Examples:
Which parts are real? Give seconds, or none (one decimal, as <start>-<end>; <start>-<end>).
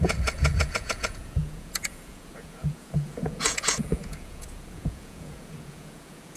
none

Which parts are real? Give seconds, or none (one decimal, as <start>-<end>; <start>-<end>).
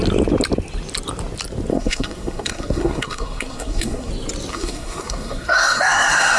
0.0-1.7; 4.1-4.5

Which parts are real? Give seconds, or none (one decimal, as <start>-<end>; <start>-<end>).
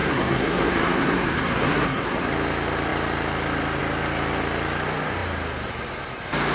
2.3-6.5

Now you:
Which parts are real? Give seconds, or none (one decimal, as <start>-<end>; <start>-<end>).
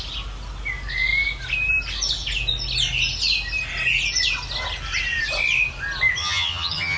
0.0-6.2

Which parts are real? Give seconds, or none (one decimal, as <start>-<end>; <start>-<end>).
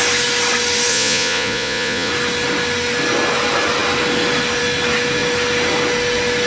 0.0-0.9; 2.1-6.5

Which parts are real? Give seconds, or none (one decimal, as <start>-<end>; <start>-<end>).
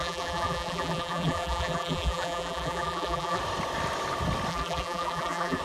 3.4-4.5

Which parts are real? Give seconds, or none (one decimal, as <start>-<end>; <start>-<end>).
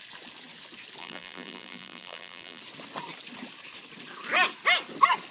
0.0-1.0; 2.6-5.3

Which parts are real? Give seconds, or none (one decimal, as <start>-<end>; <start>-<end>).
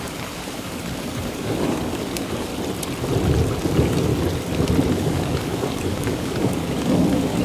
2.5-3.6; 4.1-4.9